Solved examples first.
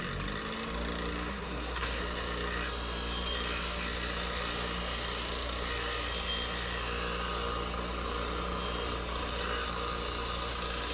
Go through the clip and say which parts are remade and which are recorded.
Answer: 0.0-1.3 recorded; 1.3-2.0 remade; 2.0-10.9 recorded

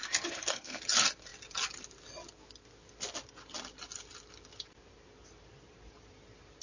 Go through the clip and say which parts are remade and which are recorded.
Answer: 0.0-0.8 remade; 0.8-6.6 recorded

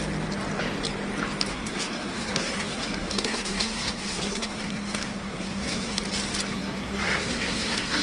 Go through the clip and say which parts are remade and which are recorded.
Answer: 0.0-1.5 recorded; 1.5-6.0 remade; 6.0-6.5 recorded; 6.5-8.0 remade

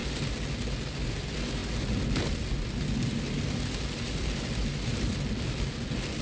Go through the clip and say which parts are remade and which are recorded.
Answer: 0.0-6.2 recorded

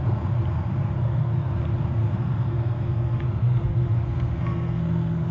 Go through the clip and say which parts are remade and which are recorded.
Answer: 0.0-0.8 recorded; 0.8-1.6 remade; 1.6-2.0 recorded; 2.0-5.3 remade

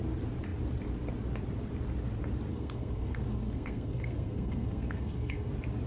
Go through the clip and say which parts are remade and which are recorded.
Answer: 0.0-2.5 recorded; 2.5-5.5 remade; 5.5-5.9 recorded

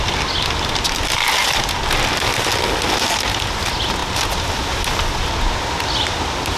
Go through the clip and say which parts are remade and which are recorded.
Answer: 0.0-6.6 recorded